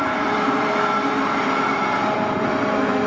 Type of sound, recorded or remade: remade